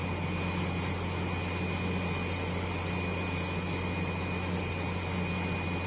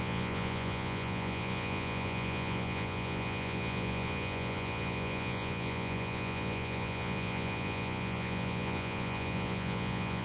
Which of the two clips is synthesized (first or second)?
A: second